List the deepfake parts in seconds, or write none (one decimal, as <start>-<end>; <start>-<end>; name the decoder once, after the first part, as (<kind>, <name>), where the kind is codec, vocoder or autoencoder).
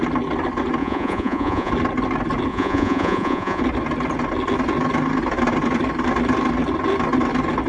0.8-1.7 (vocoder, Vocos); 2.5-3.6